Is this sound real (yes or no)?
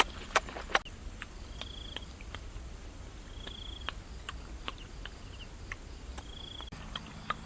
yes